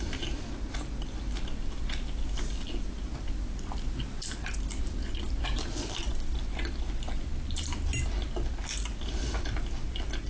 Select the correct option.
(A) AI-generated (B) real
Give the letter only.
B